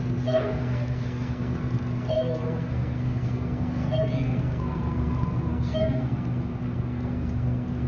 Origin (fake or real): fake